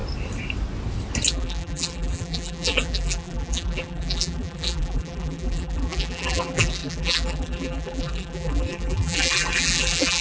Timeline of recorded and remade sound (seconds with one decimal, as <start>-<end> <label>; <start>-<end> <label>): 0.0-1.3 recorded; 1.3-10.2 remade